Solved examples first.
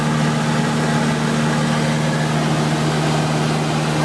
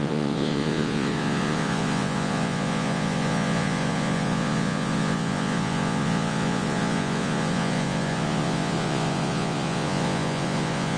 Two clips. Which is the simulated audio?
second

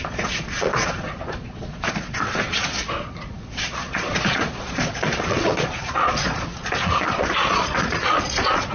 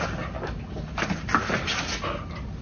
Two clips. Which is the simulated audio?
first